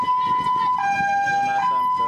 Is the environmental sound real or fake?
real